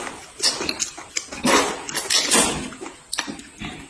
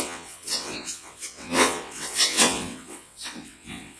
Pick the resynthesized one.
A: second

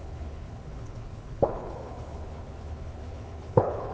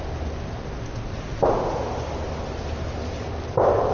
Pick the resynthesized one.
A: first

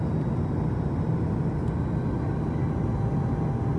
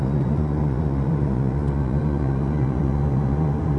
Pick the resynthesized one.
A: second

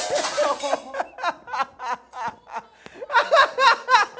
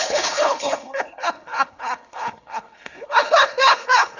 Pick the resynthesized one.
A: second